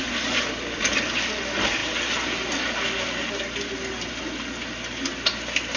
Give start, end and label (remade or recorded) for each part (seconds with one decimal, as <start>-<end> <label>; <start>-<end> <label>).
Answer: 0.0-5.8 recorded